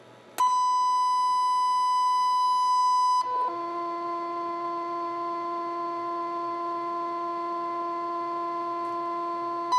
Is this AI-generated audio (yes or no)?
no